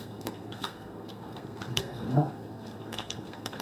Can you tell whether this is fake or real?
fake